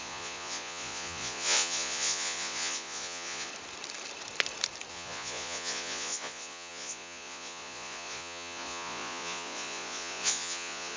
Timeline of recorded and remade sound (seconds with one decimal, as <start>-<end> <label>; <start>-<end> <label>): 0.0-3.5 remade; 3.5-4.9 recorded; 4.9-11.0 remade

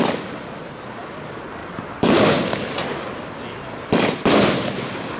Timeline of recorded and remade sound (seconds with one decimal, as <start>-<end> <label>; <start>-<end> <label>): 0.0-5.2 recorded

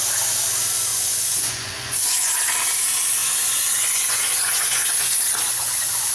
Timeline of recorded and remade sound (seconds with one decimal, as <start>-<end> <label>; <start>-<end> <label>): 0.0-0.9 recorded; 0.9-2.4 remade; 2.4-3.2 recorded; 3.2-5.1 remade; 5.1-6.1 recorded

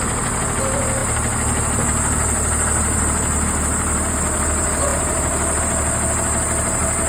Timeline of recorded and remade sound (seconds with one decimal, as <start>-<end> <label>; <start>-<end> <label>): 0.0-7.1 recorded

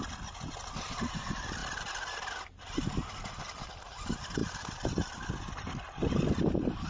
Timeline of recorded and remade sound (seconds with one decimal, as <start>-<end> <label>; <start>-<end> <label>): 0.0-1.6 remade; 1.6-2.9 recorded; 2.9-4.4 remade; 4.4-6.9 recorded

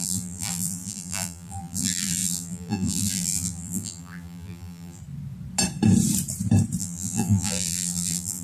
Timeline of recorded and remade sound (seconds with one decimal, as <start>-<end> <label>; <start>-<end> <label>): 0.0-5.0 remade; 5.0-6.8 recorded; 6.8-8.4 remade

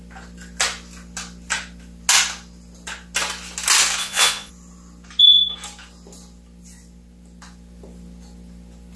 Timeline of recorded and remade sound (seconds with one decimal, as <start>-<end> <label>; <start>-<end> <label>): 0.0-4.0 recorded; 4.0-4.5 remade; 4.5-9.0 recorded